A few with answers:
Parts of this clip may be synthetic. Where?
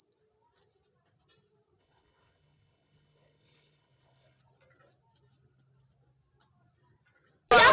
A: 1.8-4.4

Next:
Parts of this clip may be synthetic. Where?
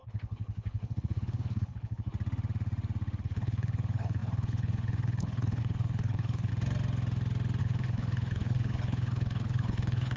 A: 0.0-2.1; 3.2-6.5; 7.6-10.2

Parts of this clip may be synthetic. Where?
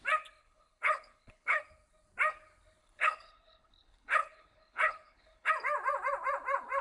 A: 0.4-1.6; 2.8-5.5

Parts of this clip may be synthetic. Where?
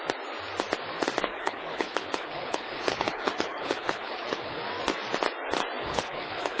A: 1.3-4.6; 5.8-6.6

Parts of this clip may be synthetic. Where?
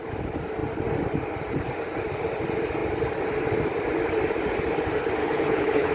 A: 5.2-5.9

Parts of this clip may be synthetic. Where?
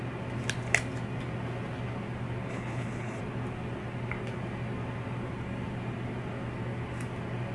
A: 2.5-3.2